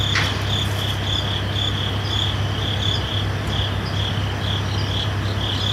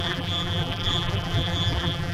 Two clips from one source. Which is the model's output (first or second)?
second